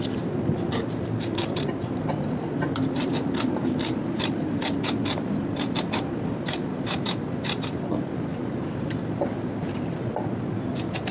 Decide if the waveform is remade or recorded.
remade